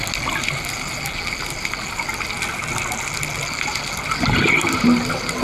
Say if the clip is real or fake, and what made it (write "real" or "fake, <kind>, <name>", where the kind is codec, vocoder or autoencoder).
real